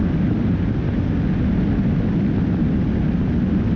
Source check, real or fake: real